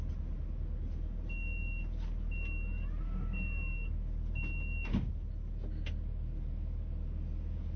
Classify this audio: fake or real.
real